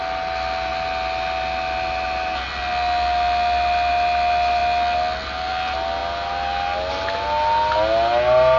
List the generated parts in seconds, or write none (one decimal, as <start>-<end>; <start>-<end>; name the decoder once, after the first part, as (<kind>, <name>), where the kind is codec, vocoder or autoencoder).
none